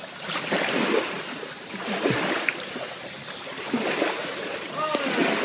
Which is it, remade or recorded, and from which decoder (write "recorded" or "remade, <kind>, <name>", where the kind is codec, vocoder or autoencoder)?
recorded